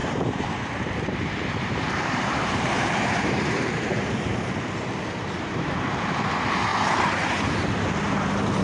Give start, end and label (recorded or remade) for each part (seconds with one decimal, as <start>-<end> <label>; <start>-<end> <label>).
0.0-6.7 remade; 6.7-8.6 recorded